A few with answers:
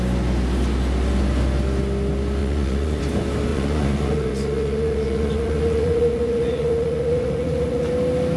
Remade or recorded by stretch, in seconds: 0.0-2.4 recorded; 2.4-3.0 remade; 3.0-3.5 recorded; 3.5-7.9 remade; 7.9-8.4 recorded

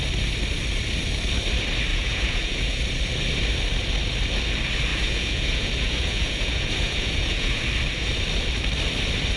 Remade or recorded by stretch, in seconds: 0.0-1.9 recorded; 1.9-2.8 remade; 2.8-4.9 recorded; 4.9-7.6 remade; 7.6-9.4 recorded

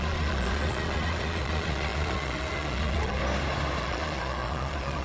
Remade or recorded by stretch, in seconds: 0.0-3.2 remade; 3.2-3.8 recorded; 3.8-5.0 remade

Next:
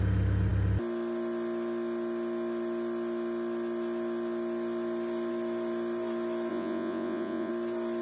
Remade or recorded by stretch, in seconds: 0.0-6.5 recorded; 6.5-7.5 remade; 7.5-8.0 recorded